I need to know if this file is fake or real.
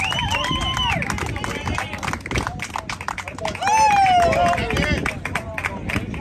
real